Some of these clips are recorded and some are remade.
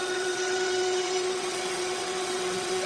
remade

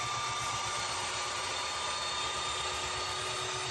recorded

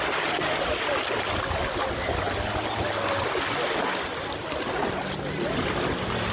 recorded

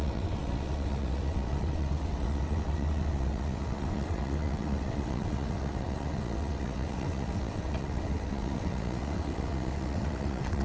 remade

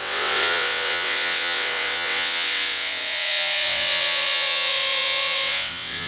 remade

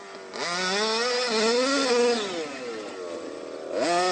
recorded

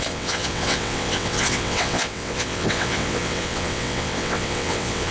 remade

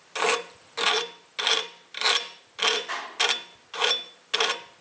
recorded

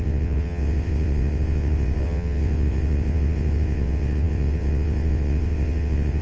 remade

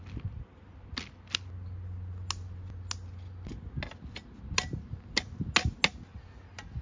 recorded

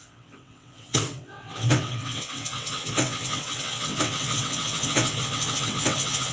remade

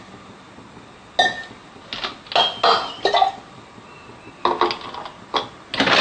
recorded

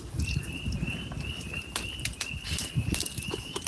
recorded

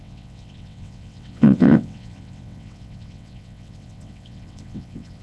remade